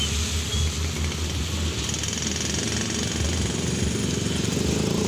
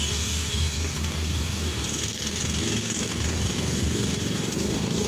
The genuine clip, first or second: first